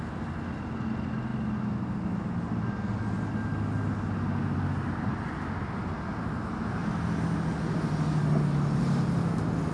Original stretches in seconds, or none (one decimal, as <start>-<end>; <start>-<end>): 0.0-9.7